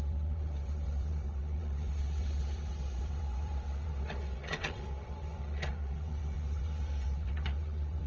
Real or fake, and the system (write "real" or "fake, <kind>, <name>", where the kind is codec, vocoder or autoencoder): fake, vocoder, WaveNeXt